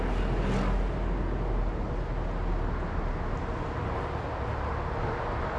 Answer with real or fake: real